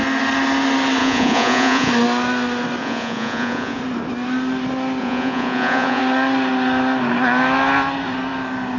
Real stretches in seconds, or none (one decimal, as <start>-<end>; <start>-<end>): 0.0-1.0; 1.9-2.8; 3.8-5.0; 6.0-8.8